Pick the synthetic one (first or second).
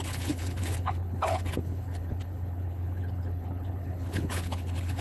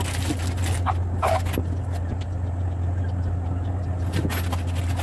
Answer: first